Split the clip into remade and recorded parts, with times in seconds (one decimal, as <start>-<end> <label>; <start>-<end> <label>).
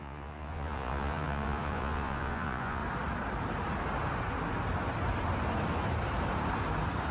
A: 0.0-2.8 remade; 2.8-7.1 recorded